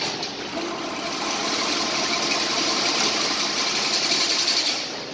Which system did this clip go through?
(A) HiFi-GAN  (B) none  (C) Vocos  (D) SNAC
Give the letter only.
B